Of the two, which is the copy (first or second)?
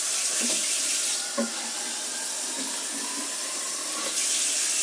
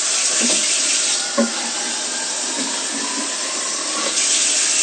first